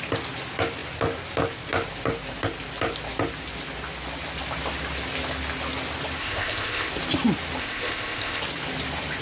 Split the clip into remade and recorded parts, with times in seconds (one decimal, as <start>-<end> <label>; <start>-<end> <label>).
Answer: 0.0-6.2 recorded; 6.2-6.9 remade; 6.9-7.6 recorded; 7.6-8.4 remade; 8.4-9.2 recorded